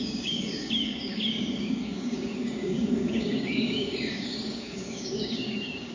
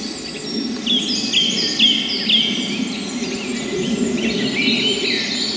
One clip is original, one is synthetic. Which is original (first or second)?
second